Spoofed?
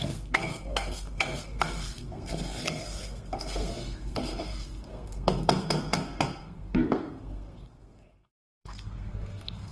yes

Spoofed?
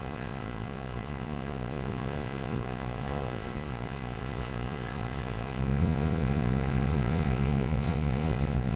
yes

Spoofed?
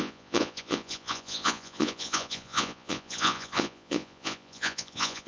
yes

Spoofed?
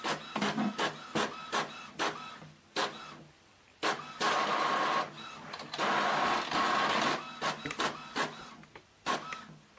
no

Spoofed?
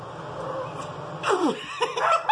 no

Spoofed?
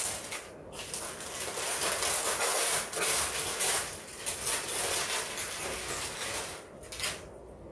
no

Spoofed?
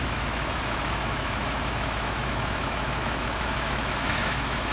yes